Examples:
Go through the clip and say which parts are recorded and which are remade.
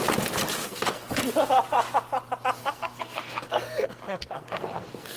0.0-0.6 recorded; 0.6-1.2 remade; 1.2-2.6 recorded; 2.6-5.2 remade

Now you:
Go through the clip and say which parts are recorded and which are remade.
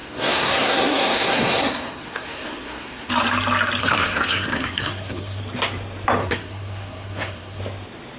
0.0-3.1 remade; 3.1-3.8 recorded; 3.8-5.4 remade; 5.4-6.2 recorded; 6.2-7.6 remade; 7.6-8.2 recorded